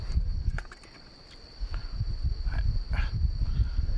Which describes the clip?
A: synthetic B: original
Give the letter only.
A